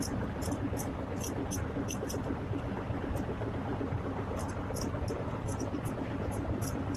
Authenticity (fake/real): fake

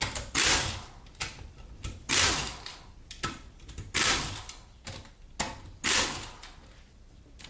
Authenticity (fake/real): real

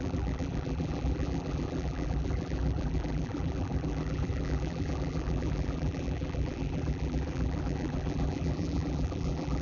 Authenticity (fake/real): fake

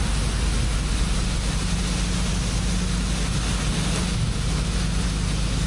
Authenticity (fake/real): real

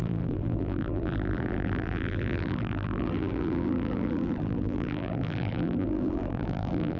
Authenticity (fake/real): fake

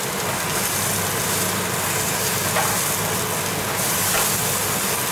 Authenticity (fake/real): real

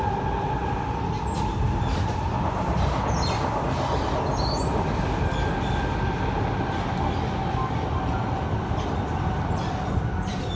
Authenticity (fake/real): real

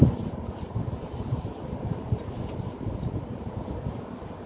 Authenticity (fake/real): fake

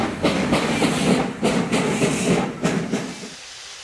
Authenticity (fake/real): real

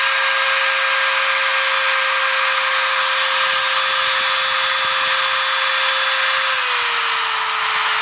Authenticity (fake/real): real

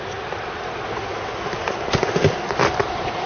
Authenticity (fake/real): real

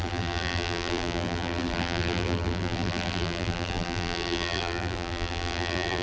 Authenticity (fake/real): fake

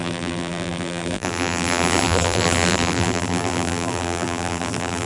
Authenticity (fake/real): fake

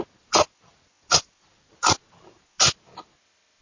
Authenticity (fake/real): real